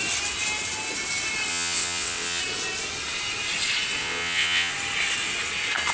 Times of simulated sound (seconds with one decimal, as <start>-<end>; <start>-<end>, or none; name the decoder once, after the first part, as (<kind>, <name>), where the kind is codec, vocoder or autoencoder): 1.5-2.4 (vocoder, WaveNeXt); 4.0-4.7